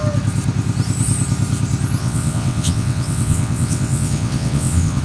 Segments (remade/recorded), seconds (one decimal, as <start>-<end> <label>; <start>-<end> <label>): 0.0-2.0 recorded; 2.0-5.0 remade